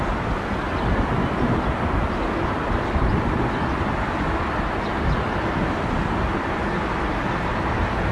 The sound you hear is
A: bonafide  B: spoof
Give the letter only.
A